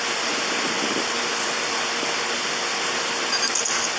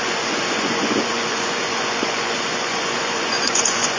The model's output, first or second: second